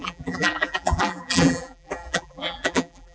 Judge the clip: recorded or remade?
remade